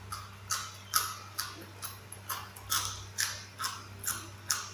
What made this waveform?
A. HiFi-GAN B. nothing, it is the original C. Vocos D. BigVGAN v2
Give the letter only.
B